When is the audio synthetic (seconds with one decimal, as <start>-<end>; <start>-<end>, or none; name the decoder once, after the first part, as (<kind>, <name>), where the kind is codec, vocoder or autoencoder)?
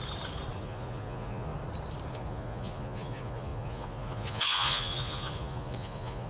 0.6-1.5 (vocoder, Vocos); 2.1-6.3